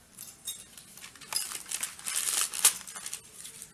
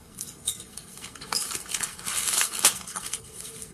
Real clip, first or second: first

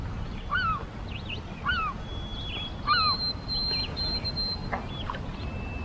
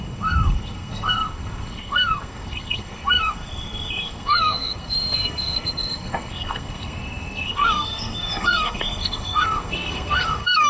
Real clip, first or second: first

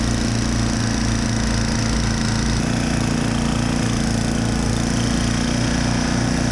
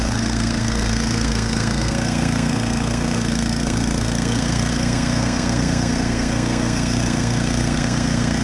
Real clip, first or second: first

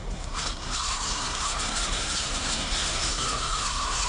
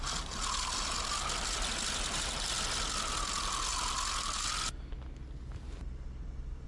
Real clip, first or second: second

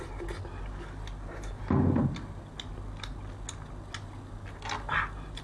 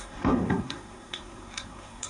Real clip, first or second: first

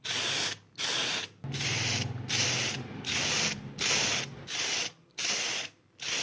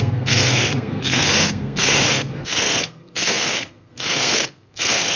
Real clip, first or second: first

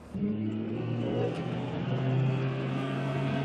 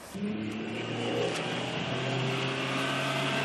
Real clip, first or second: second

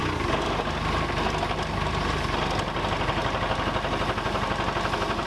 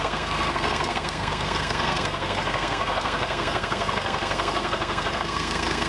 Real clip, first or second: first